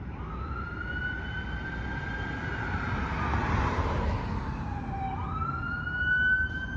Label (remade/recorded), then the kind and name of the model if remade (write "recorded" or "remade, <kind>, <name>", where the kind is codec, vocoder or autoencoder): recorded